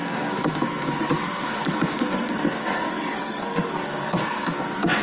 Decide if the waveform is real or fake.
fake